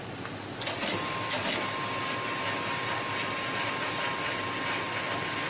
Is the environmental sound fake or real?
real